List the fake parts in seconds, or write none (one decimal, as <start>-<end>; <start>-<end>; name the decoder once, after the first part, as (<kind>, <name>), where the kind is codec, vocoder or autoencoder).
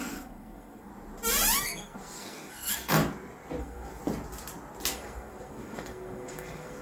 0.0-0.9 (codec, SNAC); 1.6-3.0; 3.6-4.0; 4.9-6.8